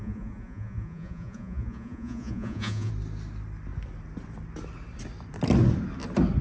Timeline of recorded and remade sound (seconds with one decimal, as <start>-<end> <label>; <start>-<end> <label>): 0.0-2.9 remade; 2.9-6.4 recorded